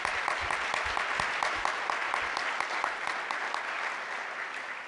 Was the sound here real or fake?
real